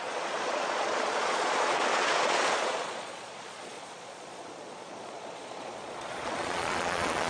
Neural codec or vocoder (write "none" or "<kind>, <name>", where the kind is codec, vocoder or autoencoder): vocoder, Vocos